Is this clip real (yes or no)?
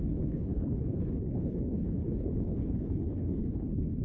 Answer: no